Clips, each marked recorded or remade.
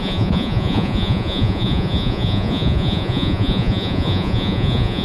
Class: remade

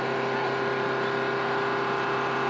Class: recorded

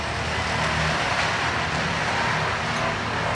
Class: recorded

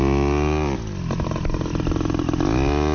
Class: recorded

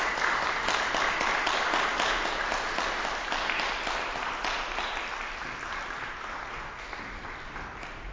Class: recorded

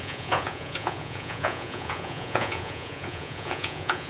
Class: remade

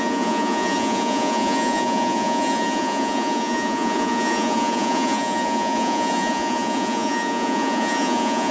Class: remade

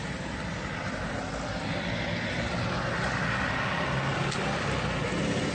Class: recorded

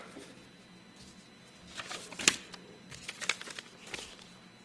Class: recorded